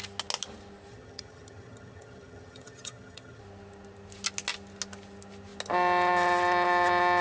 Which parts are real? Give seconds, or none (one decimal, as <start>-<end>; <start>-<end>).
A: 0.0-0.9; 3.4-7.2